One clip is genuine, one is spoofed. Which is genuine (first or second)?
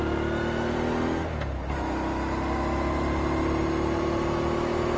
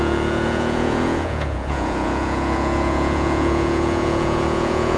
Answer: first